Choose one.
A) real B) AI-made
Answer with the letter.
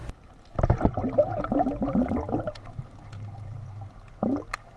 A